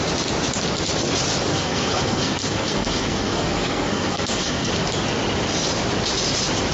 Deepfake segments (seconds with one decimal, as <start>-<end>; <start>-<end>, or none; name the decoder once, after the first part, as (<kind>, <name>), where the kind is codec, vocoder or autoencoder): 1.5-4.7 (codec, SNAC)